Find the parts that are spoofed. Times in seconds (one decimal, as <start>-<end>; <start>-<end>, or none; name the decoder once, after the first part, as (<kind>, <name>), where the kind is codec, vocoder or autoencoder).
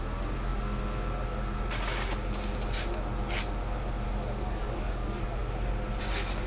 4.6-5.4 (codec, DAC)